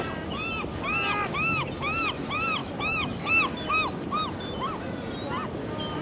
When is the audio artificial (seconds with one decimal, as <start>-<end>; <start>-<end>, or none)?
2.6-3.3